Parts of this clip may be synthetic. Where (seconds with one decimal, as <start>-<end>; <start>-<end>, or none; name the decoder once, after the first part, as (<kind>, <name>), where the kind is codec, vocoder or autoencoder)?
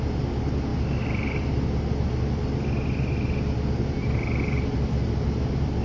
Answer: none